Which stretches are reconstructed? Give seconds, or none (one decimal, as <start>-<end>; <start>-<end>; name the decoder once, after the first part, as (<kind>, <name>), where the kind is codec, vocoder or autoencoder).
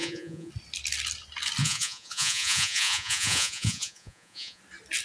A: 0.0-0.5 (vocoder, Vocos); 1.6-4.6